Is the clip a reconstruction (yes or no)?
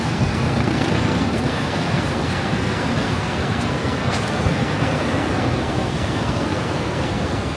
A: yes